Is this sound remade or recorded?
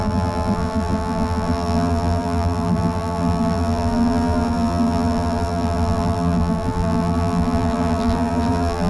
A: remade